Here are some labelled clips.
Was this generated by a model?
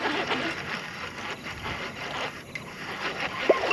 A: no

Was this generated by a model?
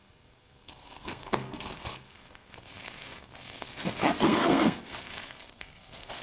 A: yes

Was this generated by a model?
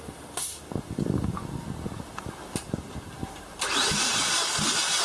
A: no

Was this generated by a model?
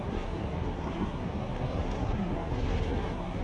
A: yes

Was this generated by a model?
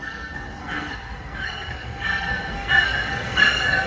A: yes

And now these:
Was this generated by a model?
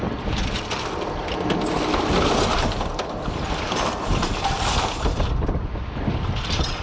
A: no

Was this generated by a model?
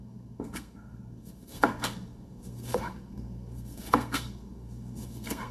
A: yes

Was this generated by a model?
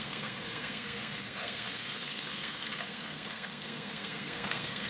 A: yes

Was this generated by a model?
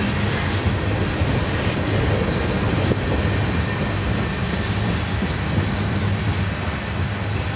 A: no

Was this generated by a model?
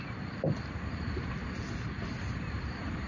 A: no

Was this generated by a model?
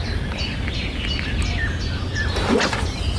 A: no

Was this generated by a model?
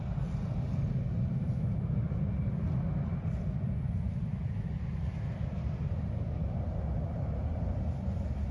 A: no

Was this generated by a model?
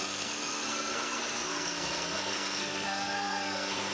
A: yes